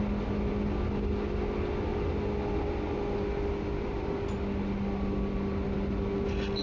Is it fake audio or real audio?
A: real